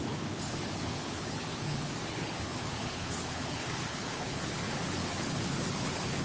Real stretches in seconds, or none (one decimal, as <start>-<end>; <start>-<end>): none